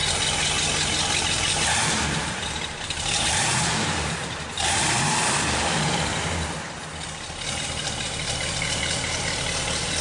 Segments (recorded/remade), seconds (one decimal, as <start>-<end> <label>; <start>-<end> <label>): 0.0-1.2 recorded; 1.2-6.1 remade; 6.1-7.5 recorded; 7.5-10.0 remade